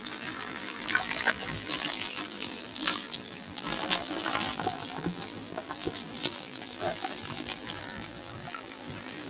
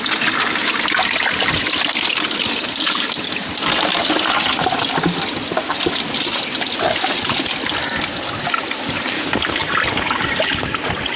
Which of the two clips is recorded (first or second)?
second